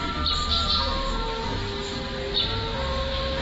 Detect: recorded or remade recorded